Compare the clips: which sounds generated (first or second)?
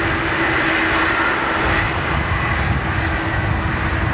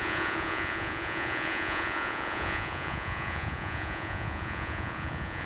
second